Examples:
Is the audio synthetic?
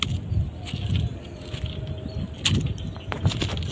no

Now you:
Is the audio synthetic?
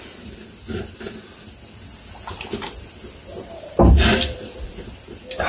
no